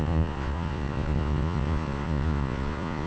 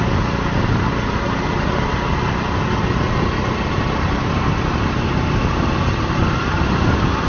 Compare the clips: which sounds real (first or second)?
second